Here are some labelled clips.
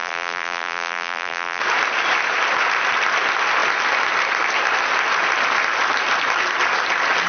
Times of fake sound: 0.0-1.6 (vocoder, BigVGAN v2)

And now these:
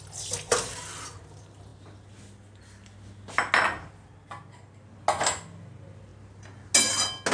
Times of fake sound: none

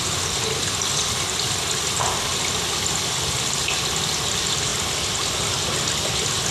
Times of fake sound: none

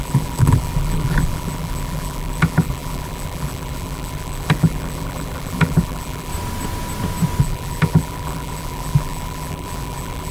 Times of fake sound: 0.0-6.3 (vocoder, BigVGAN v2); 7.4-10.3

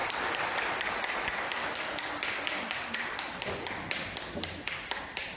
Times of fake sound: none

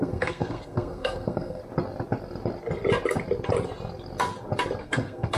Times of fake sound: 0.0-1.6 (codec, SNAC); 4.8-5.4

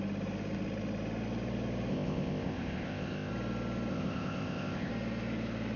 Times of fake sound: 1.9-3.3 (codec, ZipCodec); 3.9-4.9